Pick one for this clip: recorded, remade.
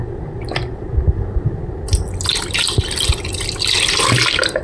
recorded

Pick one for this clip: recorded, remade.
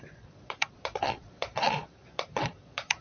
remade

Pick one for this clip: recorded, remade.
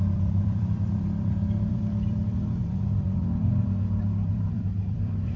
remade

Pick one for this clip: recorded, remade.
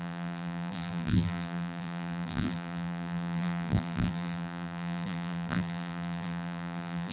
remade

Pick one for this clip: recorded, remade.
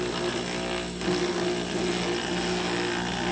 recorded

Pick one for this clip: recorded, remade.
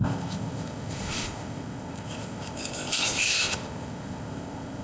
remade